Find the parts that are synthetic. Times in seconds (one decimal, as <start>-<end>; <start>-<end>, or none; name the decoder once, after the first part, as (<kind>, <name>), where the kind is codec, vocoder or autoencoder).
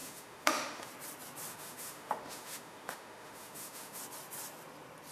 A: 0.0-0.9 (autoencoder, DAC-VAE); 1.5-4.0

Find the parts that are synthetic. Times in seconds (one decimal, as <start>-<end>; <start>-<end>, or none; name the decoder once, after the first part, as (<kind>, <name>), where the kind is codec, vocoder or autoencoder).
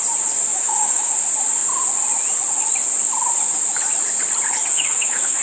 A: 0.5-1.1 (autoencoder, DAC-VAE); 4.7-5.4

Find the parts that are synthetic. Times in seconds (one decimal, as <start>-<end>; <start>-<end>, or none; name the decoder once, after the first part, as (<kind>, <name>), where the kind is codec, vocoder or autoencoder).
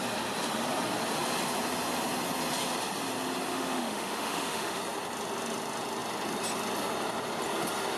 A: 3.5-4.8 (autoencoder, DAC-VAE)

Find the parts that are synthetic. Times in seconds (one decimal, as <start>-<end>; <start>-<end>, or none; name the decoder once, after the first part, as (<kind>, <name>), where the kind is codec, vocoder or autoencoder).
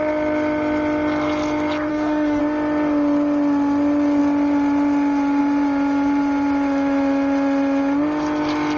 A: 1.9-2.4 (autoencoder, DAC-VAE)